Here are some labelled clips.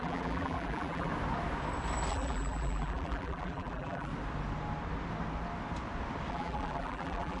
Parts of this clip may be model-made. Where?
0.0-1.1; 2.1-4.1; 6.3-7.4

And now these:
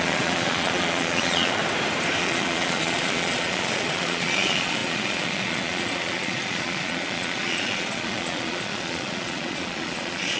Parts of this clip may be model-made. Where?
0.0-1.6; 2.2-10.4

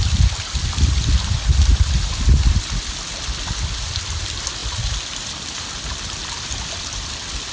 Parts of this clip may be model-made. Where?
none

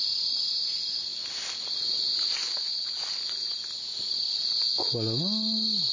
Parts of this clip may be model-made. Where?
none

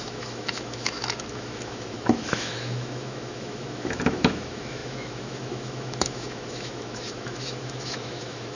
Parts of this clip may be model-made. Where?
0.0-8.6

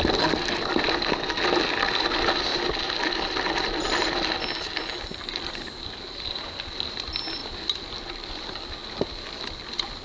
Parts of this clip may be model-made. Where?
none

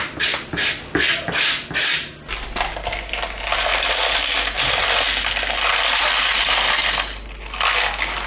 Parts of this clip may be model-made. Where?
none

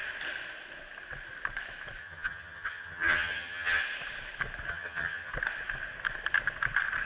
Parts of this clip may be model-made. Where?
2.0-3.8; 4.7-5.3